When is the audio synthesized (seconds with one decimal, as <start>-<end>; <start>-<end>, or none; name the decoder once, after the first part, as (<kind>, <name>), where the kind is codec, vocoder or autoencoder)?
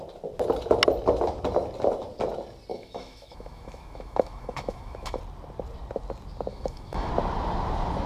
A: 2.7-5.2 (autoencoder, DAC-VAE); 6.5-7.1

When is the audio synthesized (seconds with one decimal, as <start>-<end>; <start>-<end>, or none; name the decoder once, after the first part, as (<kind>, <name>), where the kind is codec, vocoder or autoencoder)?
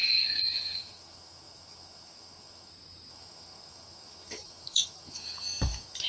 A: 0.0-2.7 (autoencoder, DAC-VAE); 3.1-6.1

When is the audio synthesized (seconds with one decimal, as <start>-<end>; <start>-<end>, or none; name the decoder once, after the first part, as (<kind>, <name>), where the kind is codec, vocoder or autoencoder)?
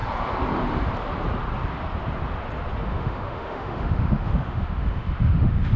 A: 2.9-5.8 (autoencoder, DAC-VAE)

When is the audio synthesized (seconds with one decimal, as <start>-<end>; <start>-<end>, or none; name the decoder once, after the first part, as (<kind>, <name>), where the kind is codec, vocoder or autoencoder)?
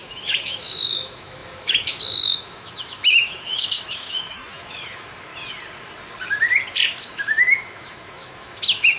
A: 0.0-5.3 (autoencoder, DAC-VAE); 7.0-9.0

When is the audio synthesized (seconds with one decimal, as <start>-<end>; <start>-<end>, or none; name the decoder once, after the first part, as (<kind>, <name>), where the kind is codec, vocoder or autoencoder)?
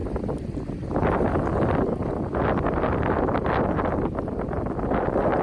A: none